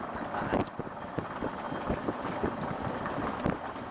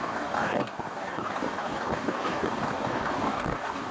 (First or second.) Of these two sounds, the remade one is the second